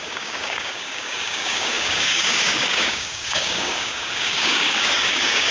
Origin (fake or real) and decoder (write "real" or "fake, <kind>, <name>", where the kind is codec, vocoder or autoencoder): fake, codec, DAC